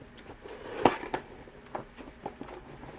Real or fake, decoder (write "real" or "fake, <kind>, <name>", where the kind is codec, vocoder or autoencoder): real